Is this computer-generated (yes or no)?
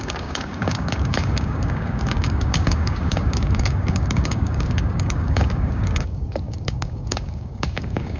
yes